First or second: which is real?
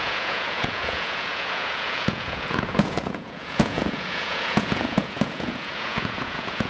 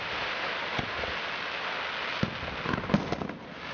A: second